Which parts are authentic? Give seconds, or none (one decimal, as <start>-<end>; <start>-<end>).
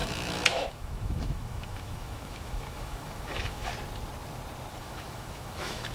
3.7-4.8